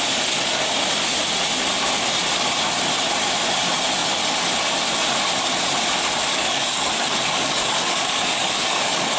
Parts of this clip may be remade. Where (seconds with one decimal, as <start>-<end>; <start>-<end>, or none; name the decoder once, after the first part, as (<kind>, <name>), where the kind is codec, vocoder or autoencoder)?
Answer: 6.3-9.2 (codec, DAC)